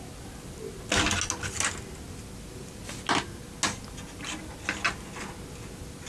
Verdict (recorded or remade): recorded